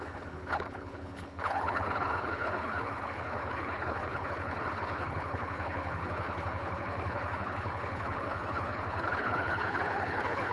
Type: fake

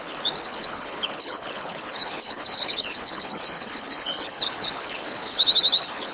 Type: fake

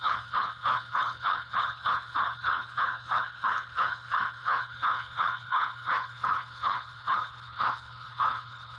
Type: fake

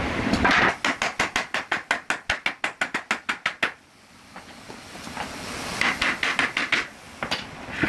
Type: real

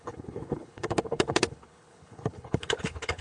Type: fake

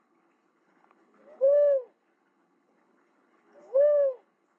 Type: fake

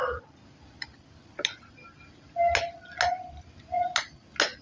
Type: real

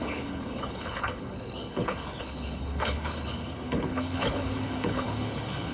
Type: fake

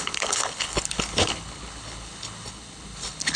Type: fake